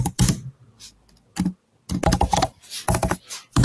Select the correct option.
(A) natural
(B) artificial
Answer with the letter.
A